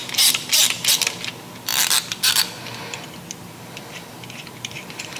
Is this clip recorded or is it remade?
recorded